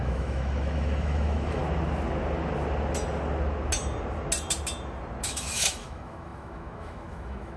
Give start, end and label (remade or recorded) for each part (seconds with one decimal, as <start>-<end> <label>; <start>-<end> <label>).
0.0-1.6 remade; 1.6-5.2 recorded; 5.2-7.6 remade